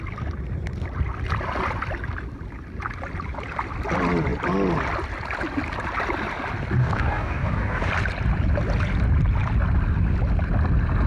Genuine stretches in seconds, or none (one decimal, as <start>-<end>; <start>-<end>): 0.0-6.8; 7.9-11.1